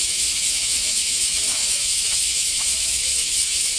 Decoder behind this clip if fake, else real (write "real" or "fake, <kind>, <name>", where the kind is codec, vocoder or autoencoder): fake, autoencoder, DAC-VAE